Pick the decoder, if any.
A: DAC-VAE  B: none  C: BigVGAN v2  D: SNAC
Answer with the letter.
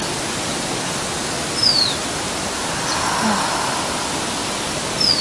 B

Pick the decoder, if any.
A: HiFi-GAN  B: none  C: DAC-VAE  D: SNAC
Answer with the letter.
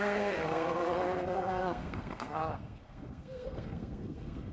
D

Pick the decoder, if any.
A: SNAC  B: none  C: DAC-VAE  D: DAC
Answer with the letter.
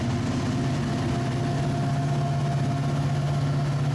B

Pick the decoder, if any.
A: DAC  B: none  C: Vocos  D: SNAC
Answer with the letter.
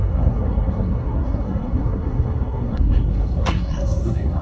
D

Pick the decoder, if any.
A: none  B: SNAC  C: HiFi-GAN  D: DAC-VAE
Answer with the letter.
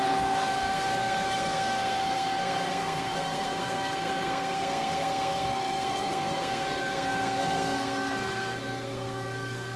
B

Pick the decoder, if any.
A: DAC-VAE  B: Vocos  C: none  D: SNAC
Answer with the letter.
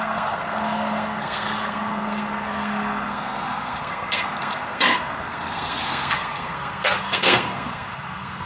D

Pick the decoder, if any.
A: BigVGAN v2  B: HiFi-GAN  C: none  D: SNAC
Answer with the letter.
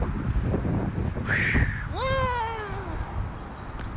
C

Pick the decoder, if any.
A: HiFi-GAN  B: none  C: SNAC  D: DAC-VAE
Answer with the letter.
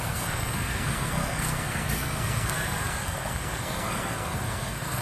C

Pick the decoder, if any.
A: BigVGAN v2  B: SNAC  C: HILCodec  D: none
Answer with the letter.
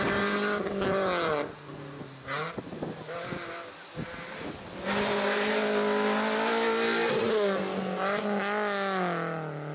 D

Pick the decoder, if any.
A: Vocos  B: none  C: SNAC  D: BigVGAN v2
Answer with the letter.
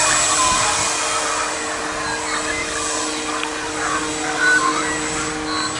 B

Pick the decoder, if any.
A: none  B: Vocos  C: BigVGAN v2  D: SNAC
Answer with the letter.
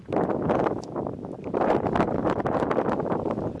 A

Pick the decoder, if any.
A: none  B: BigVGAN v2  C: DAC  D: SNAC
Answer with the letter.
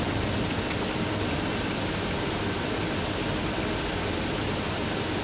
A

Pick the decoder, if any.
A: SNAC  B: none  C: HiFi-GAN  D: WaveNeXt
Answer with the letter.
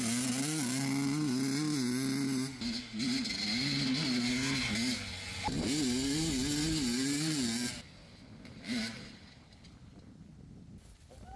B